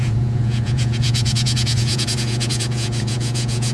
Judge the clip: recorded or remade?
remade